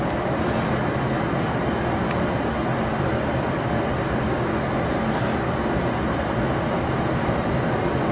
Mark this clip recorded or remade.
recorded